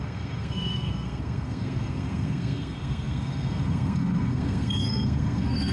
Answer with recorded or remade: remade